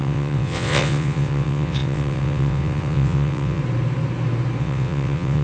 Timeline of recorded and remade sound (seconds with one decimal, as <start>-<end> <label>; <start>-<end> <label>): 0.0-3.6 remade; 3.6-4.6 recorded; 4.6-5.4 remade